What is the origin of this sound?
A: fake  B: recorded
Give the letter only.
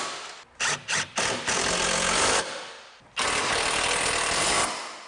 B